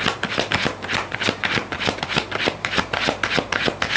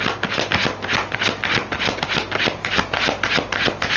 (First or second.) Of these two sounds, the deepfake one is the first